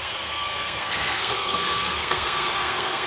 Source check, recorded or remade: remade